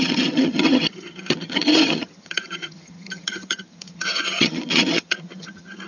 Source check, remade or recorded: remade